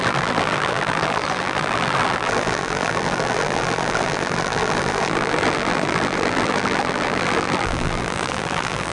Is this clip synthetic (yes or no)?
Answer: yes